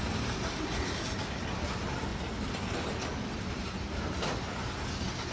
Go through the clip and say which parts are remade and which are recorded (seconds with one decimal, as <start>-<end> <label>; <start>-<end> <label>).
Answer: 0.0-5.3 recorded